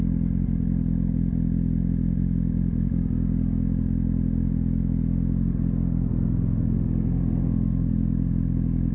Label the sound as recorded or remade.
recorded